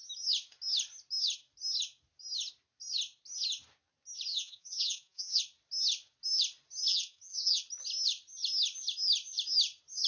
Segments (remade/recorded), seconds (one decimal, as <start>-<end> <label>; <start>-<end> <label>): 0.0-4.3 recorded; 4.3-5.4 remade; 5.4-6.9 recorded; 6.9-7.6 remade; 7.6-10.1 recorded